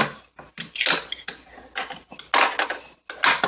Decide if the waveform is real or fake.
real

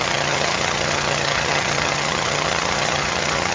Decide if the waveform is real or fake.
fake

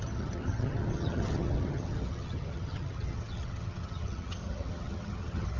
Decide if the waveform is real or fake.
fake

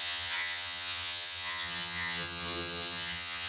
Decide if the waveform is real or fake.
fake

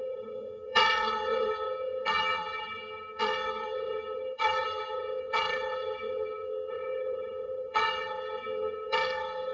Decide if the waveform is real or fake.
fake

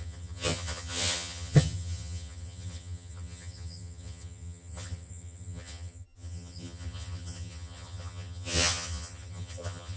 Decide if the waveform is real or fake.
fake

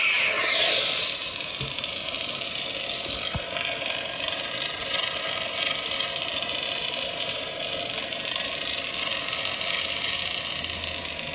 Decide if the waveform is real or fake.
real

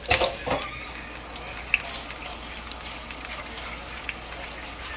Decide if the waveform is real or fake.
real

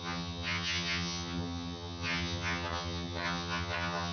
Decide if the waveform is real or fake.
fake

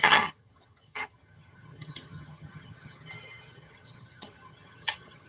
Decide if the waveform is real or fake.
fake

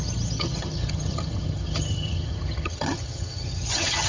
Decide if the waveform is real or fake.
fake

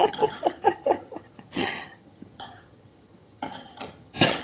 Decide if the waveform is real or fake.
fake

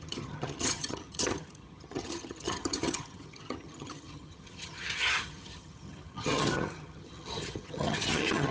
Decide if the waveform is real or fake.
fake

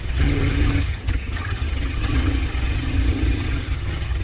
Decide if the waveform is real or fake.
fake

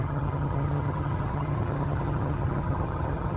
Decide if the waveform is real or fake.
fake